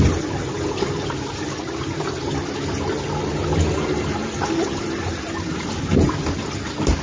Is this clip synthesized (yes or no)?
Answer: no